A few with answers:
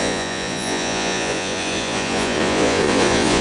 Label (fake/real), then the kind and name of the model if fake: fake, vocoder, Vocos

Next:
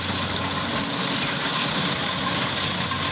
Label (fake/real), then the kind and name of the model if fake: real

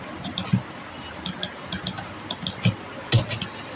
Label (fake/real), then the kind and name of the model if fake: real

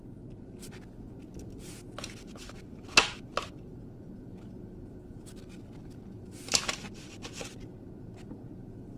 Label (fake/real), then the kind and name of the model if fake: real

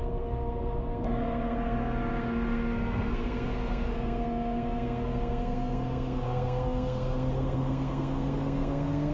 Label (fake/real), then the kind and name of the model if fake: fake, codec, SNAC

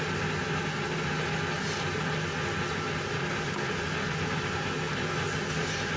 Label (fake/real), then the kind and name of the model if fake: real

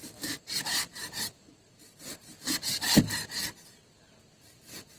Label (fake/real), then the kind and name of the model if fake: real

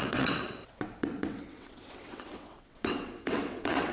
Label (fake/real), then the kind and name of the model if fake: fake, vocoder, WaveNeXt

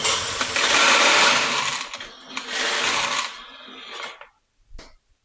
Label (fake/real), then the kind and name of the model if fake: fake, vocoder, BigVGAN v2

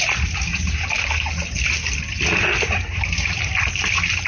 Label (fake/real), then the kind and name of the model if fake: real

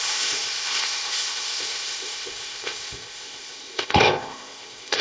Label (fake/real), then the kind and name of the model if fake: fake, codec, ZipCodec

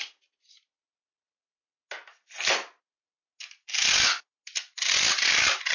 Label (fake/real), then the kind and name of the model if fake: real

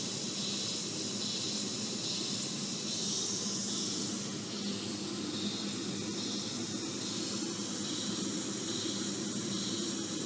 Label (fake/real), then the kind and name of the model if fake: real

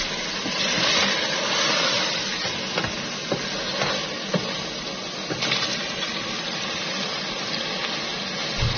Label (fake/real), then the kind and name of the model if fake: real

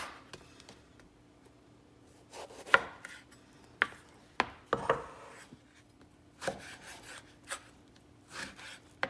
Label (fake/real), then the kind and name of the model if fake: real